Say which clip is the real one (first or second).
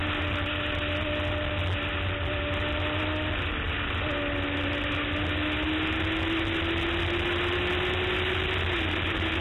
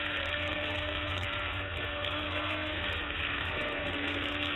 first